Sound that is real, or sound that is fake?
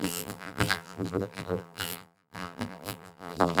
fake